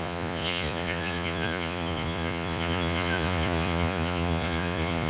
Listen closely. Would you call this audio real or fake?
fake